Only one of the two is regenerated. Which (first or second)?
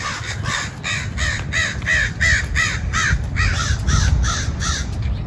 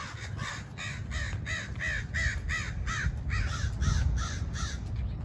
first